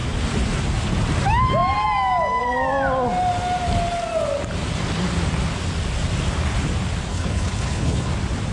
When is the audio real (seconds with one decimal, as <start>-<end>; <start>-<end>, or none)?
0.0-7.1; 8.1-8.5